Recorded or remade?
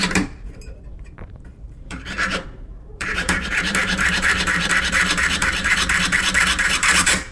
remade